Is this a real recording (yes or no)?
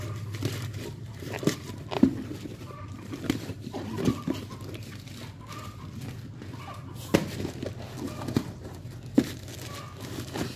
yes